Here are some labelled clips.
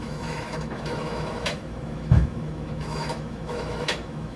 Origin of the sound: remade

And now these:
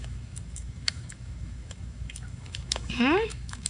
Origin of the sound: remade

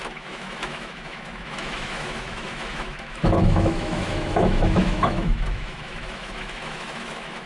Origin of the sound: remade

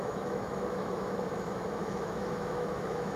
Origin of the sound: remade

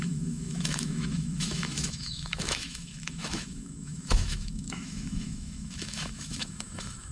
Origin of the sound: remade